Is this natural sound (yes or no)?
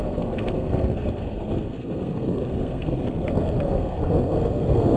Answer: no